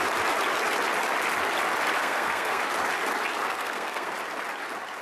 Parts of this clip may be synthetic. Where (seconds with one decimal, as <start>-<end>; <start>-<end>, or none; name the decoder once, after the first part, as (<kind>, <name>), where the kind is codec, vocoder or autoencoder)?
2.0-2.6 (codec, SNAC); 3.4-4.1

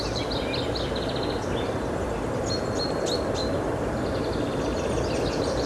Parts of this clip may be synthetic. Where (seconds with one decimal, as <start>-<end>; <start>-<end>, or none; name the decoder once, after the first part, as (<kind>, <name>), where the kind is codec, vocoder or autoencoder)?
none

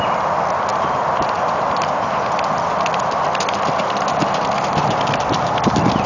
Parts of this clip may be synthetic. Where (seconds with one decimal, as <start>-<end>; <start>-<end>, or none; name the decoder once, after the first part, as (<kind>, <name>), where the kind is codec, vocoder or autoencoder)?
none

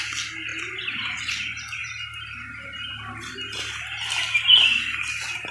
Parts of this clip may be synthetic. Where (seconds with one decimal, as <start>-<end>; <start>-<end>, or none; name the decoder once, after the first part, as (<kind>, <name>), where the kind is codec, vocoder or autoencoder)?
none

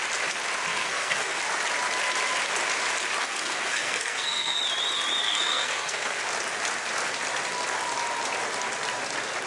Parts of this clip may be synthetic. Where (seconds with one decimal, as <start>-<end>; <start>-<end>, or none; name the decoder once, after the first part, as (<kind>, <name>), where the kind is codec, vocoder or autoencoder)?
0.7-1.4 (codec, SNAC); 3.2-4.6; 5.2-6.2

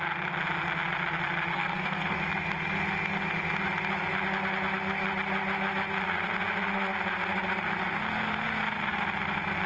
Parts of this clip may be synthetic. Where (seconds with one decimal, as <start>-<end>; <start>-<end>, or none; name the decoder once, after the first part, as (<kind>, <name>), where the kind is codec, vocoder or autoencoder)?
1.5-2.2 (codec, SNAC)